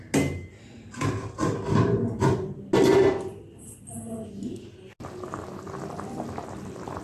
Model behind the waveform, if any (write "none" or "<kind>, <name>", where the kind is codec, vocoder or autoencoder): none